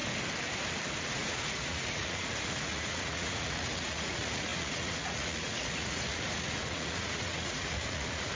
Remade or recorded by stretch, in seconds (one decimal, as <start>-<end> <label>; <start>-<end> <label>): 0.0-1.0 recorded; 1.0-8.4 remade